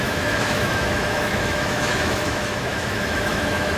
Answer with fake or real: fake